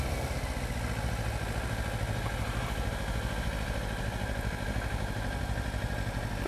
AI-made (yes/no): no